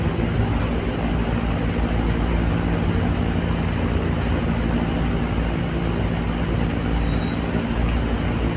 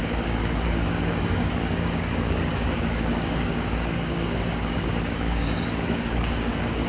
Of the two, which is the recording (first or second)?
first